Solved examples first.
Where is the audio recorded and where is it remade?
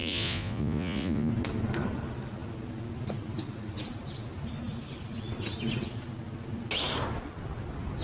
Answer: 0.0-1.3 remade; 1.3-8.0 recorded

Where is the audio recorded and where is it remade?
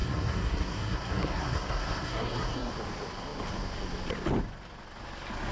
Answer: 0.0-2.7 remade; 2.7-5.5 recorded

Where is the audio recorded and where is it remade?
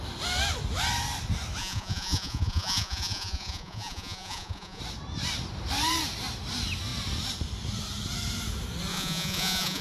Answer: 0.0-1.6 recorded; 1.6-4.8 remade; 4.8-8.9 recorded; 8.9-9.8 remade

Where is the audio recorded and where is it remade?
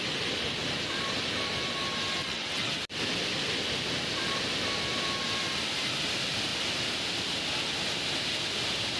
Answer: 0.0-2.2 recorded; 2.2-2.7 remade; 2.7-9.0 recorded